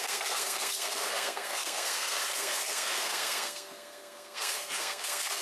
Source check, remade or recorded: remade